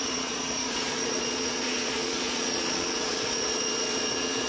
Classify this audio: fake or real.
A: fake